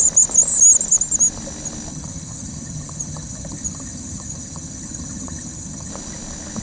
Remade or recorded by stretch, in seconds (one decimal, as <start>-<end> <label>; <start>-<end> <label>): 0.0-1.9 recorded; 1.9-5.9 remade; 5.9-6.6 recorded